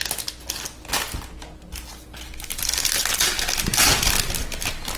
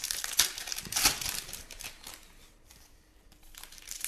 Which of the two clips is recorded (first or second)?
first